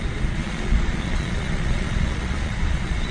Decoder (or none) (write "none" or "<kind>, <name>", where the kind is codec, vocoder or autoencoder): vocoder, Vocos